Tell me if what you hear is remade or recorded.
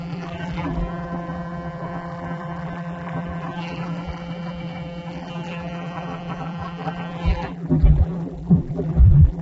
remade